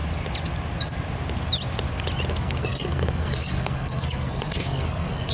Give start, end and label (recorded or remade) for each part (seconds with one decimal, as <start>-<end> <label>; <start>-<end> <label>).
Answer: 0.0-2.3 recorded; 2.3-5.3 remade